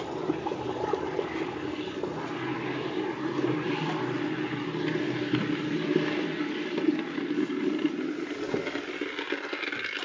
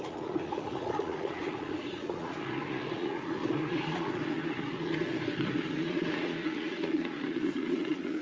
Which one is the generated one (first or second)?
second